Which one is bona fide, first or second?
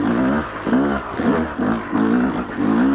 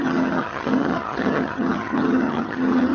first